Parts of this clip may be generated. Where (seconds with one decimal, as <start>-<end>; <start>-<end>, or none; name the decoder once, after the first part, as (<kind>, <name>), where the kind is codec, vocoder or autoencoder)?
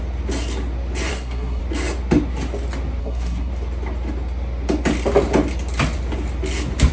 1.1-1.6 (codec, SNAC); 3.0-3.5